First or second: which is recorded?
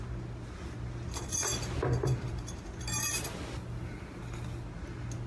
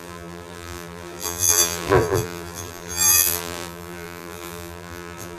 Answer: first